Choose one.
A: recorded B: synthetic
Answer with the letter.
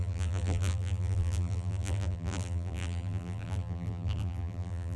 B